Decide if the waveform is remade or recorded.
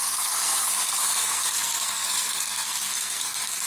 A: remade